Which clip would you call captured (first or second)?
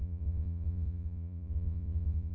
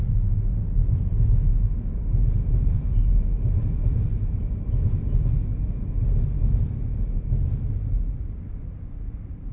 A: second